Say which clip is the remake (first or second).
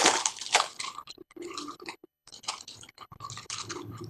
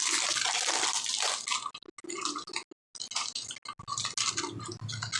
first